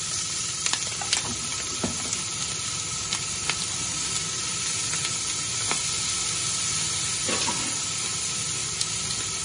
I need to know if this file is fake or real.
real